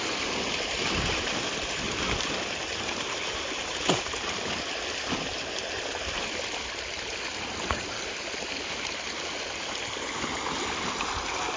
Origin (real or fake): real